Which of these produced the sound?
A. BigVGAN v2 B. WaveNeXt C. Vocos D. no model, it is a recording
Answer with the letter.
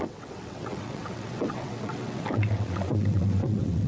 B